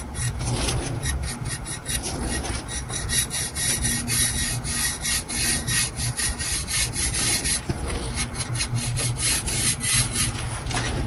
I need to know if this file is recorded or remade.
recorded